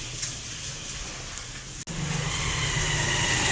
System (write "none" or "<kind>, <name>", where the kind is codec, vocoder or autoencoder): none